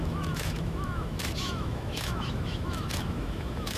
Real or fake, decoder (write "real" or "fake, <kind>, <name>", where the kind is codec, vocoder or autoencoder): fake, autoencoder, DAC-VAE